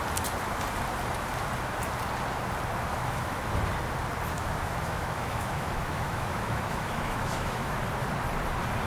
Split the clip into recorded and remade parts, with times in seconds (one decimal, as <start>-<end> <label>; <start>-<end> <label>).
0.0-2.9 recorded; 2.9-3.4 remade; 3.4-4.4 recorded; 4.4-7.8 remade; 7.8-8.9 recorded